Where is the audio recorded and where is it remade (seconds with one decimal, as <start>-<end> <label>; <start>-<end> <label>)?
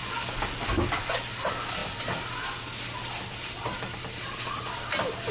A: 0.0-0.9 remade; 0.9-5.3 recorded